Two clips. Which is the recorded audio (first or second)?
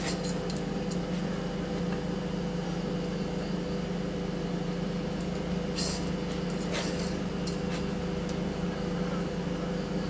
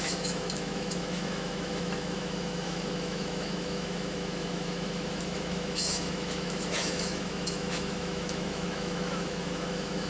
first